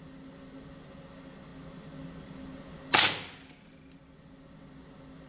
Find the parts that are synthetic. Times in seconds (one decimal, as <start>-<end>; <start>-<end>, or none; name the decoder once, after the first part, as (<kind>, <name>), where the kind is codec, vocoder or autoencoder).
none